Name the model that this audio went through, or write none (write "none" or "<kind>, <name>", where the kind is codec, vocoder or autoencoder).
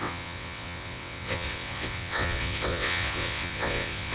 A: vocoder, WaveNeXt